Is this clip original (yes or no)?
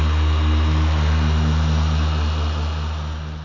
yes